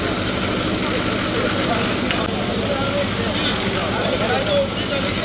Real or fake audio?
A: real